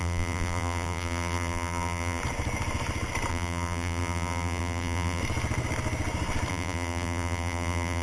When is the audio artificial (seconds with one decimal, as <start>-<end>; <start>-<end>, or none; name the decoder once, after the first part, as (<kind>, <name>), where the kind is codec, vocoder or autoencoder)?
0.0-2.2 (vocoder, BigVGAN v2); 3.3-5.2; 6.5-8.0

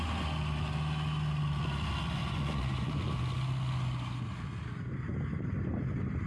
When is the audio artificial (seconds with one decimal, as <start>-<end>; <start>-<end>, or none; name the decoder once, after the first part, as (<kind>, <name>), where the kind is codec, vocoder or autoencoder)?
2.2-3.1 (vocoder, Vocos)

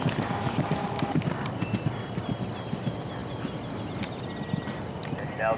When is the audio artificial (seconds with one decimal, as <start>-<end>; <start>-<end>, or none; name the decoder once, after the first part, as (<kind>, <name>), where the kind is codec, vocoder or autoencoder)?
none

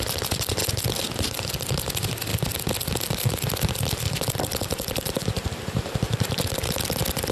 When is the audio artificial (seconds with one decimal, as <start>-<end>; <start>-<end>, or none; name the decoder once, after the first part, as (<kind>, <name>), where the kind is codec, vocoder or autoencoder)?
5.2-6.4 (vocoder, BigVGAN v2)

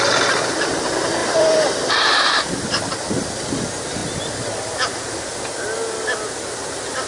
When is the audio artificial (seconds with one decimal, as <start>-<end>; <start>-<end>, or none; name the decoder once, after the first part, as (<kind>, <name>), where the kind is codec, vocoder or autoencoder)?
1.2-2.8 (vocoder, BigVGAN v2); 4.0-4.6

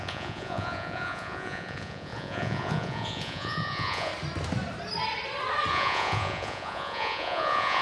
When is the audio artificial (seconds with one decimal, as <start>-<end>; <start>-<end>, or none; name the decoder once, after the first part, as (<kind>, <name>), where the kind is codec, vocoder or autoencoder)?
0.0-4.1 (vocoder, Vocos); 5.7-7.8

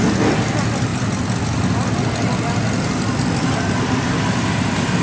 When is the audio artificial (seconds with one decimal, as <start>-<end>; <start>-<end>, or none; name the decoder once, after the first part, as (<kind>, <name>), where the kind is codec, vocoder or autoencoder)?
none